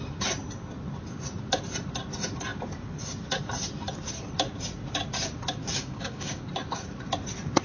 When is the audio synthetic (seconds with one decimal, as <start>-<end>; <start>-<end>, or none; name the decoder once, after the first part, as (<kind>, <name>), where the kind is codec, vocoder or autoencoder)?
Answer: 5.6-6.4 (codec, DAC)

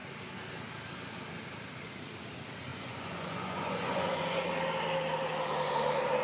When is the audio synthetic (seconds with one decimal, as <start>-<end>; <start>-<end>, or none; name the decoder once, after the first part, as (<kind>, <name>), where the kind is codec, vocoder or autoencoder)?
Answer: 2.7-4.5 (vocoder, Vocos)

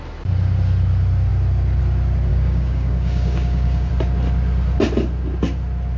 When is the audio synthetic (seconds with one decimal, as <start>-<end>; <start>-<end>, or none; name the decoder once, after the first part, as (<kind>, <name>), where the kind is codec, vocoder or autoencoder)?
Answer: 2.3-3.9 (codec, DAC)

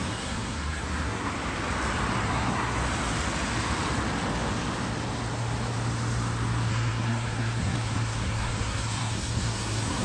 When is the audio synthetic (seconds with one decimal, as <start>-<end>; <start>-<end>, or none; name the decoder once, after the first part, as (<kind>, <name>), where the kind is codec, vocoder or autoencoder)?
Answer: 0.0-1.3 (codec, SNAC); 2.2-2.8; 6.7-10.0

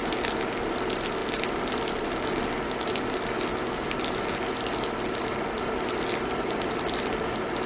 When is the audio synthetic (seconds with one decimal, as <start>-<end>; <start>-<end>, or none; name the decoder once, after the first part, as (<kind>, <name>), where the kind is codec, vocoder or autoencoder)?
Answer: none

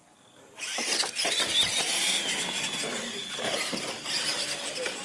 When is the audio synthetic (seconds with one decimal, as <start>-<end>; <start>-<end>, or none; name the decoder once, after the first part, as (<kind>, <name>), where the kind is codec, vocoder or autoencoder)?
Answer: none

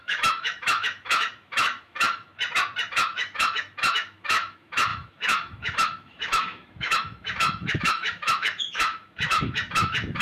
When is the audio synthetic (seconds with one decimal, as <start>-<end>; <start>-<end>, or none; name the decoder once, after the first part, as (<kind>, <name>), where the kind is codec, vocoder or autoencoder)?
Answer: 0.0-2.3 (autoencoder, DAC-VAE); 2.9-10.2